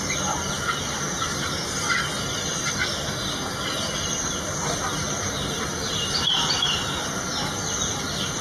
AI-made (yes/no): no